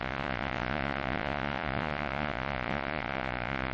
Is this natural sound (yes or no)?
no